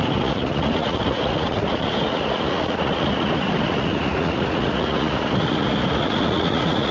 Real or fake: fake